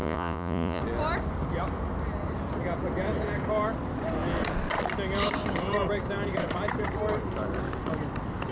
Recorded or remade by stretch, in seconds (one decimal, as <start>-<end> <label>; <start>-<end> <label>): 0.0-0.8 remade; 0.8-8.5 recorded

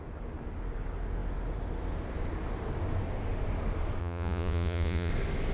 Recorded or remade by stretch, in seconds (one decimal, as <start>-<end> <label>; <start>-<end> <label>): 0.0-4.0 recorded; 4.0-5.1 remade; 5.1-5.5 recorded

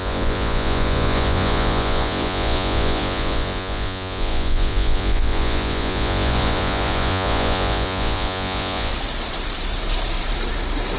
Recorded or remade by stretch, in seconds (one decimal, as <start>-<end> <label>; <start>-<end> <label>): 0.0-8.9 remade; 8.9-11.0 recorded

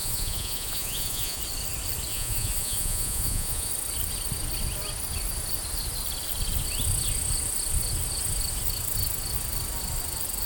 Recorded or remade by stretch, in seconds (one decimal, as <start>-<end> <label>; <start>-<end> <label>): 0.0-1.4 remade; 1.4-2.1 recorded; 2.1-3.7 remade; 3.7-10.5 recorded

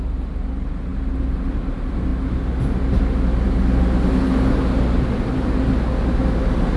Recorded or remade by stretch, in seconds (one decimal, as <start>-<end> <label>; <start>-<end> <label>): 0.0-6.8 recorded

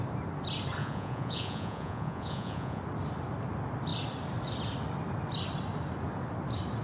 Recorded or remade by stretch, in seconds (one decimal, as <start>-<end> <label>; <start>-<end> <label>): 0.0-0.8 recorded; 0.8-2.8 remade; 2.8-6.8 recorded

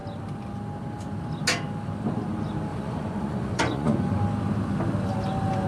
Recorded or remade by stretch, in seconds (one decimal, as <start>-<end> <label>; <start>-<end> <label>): 0.0-2.7 recorded; 2.7-4.2 remade; 4.2-5.7 recorded